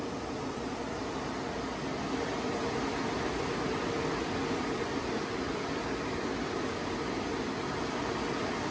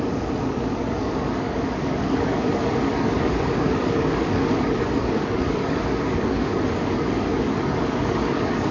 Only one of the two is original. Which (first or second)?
first